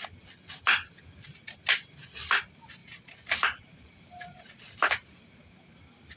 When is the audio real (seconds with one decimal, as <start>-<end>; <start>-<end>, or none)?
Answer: 0.0-2.8; 4.6-6.2